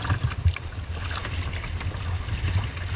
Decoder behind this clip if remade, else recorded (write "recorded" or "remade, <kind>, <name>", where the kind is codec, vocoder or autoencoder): recorded